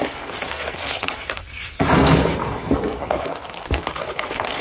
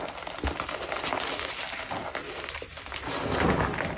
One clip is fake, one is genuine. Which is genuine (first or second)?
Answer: second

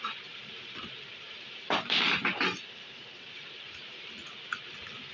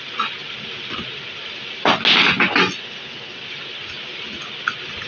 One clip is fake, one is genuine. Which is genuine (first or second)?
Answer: second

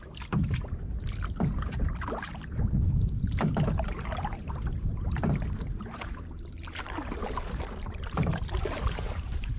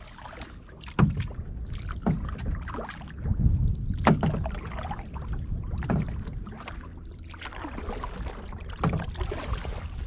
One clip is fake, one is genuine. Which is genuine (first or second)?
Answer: second